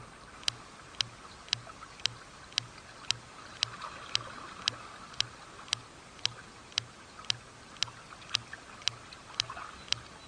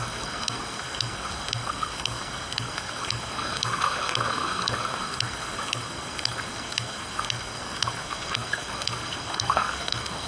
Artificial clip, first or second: second